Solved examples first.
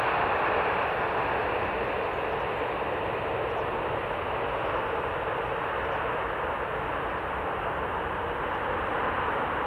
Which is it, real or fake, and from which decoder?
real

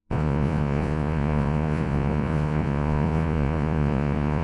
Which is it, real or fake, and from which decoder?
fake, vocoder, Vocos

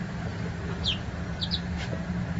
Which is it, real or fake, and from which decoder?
real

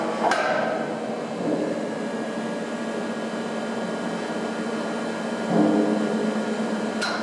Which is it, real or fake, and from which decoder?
real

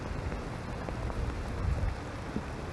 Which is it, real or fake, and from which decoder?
real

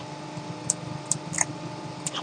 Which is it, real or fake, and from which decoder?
real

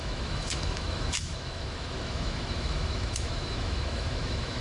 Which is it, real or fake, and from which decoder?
fake, autoencoder, DAC-VAE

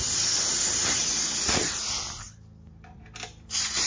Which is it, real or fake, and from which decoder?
real